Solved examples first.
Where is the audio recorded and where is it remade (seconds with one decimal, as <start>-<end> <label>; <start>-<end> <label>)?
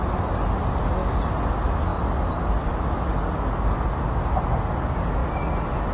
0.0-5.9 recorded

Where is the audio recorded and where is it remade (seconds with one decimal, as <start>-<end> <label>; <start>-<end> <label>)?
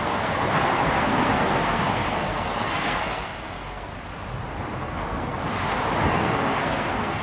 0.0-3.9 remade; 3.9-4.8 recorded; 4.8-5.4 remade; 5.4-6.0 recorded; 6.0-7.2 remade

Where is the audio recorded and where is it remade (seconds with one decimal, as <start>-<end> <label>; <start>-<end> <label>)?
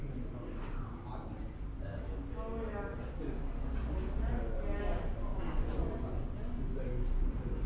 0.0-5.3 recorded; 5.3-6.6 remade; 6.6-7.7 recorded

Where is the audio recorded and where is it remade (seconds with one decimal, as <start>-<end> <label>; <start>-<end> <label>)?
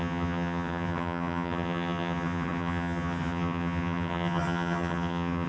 0.0-5.5 remade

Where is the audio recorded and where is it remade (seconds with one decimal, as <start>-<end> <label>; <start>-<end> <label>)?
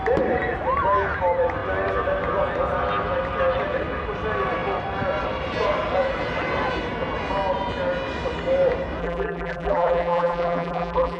0.0-9.0 recorded; 9.0-11.2 remade